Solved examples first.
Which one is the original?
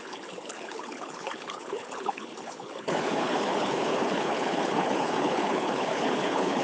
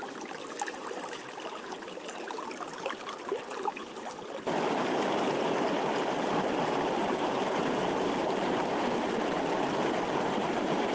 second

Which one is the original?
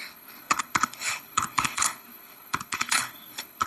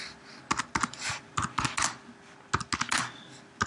second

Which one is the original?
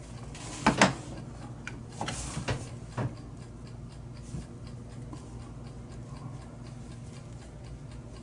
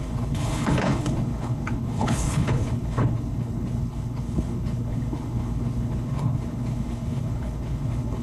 first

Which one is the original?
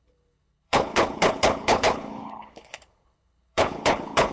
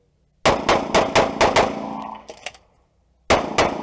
second